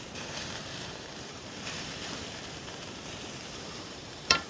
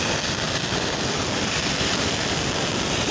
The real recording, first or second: second